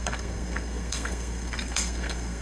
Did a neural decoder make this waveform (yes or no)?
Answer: yes